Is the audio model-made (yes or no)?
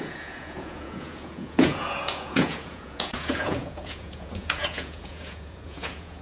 yes